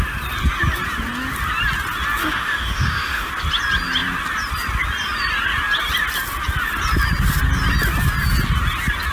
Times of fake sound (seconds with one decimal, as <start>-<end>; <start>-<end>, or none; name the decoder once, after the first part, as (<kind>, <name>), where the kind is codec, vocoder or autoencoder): 2.2-3.3 (autoencoder, DAC-VAE)